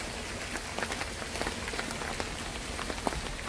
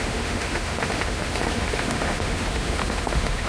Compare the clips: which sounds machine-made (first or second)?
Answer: second